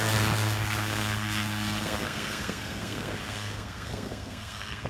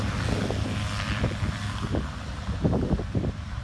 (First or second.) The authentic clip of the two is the second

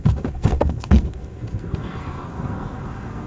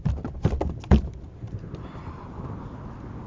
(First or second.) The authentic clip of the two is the second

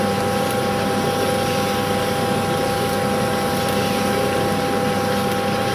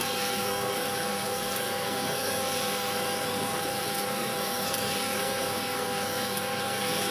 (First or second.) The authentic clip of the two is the first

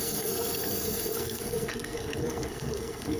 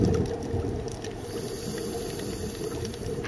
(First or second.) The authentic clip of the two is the second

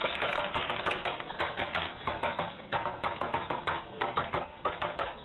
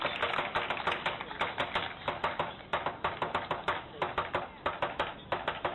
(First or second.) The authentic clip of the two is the second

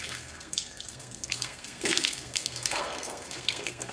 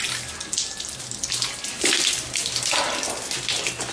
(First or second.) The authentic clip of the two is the second